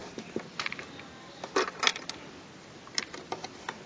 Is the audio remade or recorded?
recorded